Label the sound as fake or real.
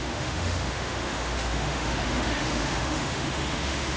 fake